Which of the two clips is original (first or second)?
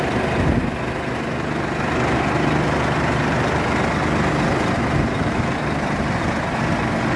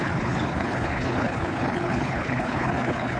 first